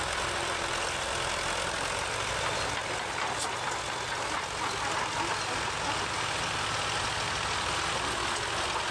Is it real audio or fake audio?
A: real